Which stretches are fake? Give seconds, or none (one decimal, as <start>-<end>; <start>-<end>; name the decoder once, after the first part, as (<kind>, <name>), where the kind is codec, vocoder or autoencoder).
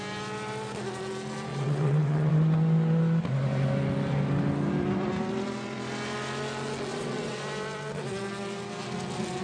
1.5-2.3 (vocoder, WaveNeXt); 6.9-7.4